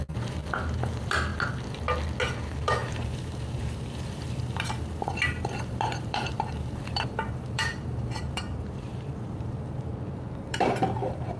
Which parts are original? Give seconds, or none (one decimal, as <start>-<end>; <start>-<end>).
1.3-2.4; 9.9-10.4